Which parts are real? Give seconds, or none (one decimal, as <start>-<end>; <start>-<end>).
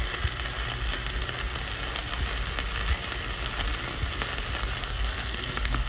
0.0-4.8